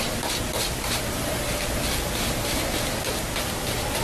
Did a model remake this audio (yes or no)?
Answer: no